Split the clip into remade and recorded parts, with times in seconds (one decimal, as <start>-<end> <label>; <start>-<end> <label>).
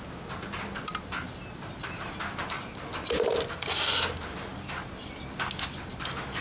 0.0-6.4 recorded